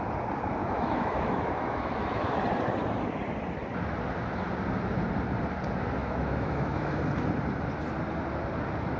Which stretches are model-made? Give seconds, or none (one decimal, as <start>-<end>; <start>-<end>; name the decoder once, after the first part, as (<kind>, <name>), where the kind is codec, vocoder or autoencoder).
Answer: 0.6-2.4 (autoencoder, DAC-VAE); 6.0-7.0